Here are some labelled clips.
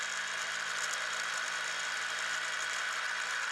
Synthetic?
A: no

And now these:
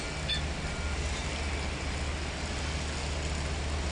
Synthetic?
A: no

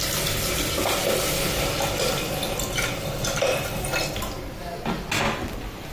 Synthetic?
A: no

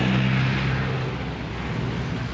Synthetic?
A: no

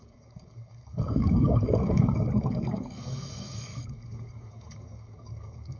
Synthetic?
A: yes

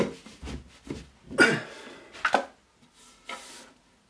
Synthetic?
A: no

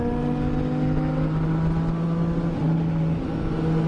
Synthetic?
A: no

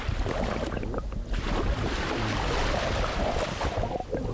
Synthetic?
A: no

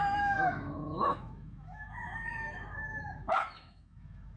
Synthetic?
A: yes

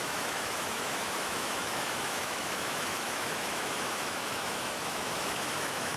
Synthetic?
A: yes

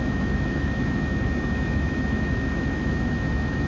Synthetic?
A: yes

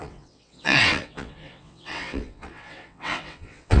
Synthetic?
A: yes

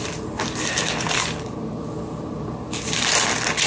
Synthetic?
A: no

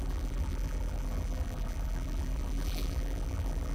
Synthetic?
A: yes